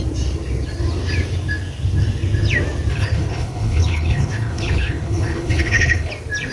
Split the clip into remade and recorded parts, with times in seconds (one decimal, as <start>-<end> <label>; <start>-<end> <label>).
0.0-2.9 recorded; 2.9-6.1 remade; 6.1-6.5 recorded